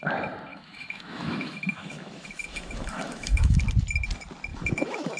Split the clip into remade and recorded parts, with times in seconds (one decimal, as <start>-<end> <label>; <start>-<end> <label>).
0.0-0.5 recorded; 0.5-3.6 remade; 3.6-4.5 recorded; 4.5-5.2 remade